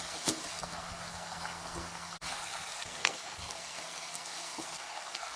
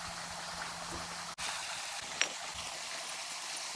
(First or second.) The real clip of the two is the second